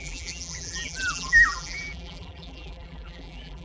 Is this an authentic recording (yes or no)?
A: no